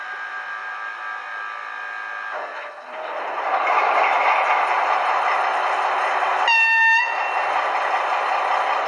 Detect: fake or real real